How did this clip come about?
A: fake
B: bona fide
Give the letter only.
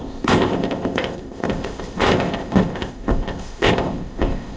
A